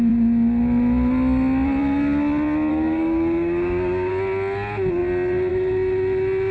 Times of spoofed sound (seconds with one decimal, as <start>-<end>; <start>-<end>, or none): 2.7-4.1